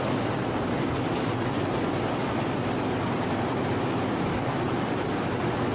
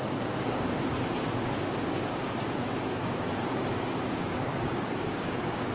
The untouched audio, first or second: first